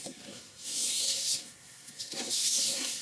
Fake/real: fake